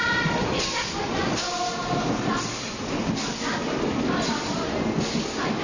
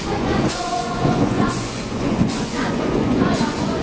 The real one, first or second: first